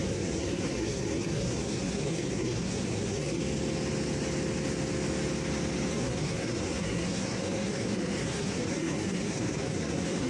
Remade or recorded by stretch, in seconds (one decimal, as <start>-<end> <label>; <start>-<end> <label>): 0.0-3.4 remade; 3.4-5.9 recorded; 5.9-10.3 remade